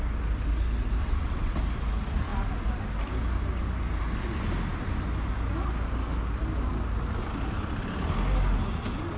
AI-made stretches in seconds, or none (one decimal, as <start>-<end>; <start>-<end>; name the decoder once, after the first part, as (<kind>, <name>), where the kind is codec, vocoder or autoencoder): 1.0-1.5 (vocoder, WaveNeXt)